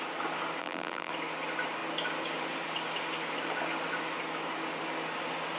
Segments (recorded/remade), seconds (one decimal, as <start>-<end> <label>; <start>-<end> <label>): 0.0-0.6 recorded; 0.6-1.1 remade; 1.1-5.6 recorded